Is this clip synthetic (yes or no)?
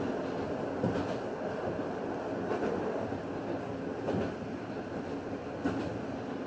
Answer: no